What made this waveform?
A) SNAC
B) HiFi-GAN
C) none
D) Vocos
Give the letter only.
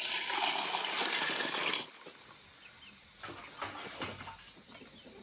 C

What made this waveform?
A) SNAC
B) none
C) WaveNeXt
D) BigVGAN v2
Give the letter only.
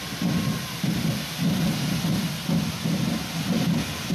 B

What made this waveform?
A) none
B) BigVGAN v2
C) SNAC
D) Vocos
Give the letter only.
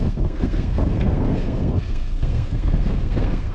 C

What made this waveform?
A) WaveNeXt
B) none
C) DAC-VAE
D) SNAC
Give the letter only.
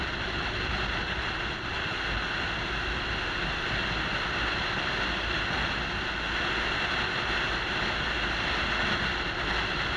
B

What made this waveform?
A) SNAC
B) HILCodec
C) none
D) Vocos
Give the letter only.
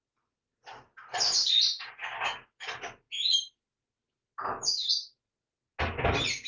C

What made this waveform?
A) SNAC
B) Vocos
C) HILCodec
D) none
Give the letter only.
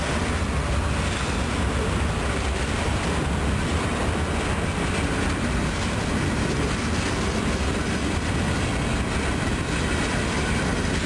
D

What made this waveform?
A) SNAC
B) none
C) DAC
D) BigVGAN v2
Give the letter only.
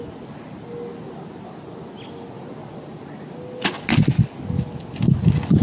B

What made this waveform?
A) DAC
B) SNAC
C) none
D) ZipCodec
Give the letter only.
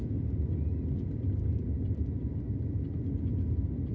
C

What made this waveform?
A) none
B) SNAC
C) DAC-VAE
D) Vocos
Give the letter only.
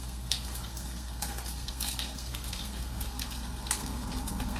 B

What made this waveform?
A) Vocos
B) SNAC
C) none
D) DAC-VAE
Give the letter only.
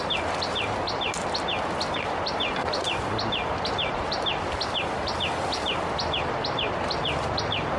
C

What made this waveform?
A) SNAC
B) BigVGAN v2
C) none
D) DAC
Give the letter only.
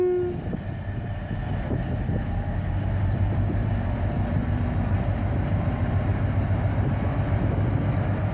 C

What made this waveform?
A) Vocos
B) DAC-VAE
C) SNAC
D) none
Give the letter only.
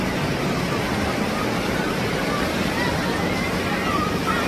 D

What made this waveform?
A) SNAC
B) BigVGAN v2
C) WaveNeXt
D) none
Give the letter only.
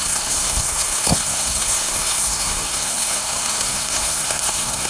A